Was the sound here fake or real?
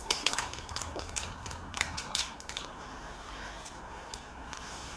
fake